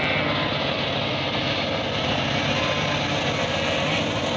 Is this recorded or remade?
recorded